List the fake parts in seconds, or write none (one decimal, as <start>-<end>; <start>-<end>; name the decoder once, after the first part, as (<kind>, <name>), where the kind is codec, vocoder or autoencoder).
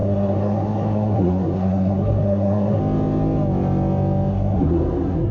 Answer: 0.0-2.8 (codec, SNAC); 4.3-5.3